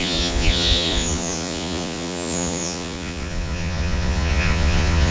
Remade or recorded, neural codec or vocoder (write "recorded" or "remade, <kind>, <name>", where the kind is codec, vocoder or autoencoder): remade, vocoder, Vocos